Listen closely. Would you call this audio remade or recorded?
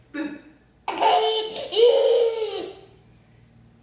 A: recorded